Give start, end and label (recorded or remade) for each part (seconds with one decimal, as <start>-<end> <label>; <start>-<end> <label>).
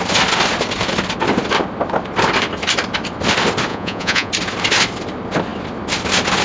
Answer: 0.0-3.7 recorded; 3.7-4.3 remade; 4.3-6.4 recorded